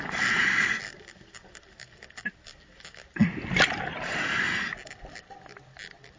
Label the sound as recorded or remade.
recorded